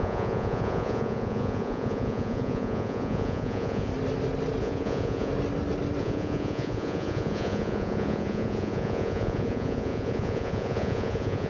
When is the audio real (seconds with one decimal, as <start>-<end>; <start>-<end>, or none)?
3.9-4.6; 5.3-6.0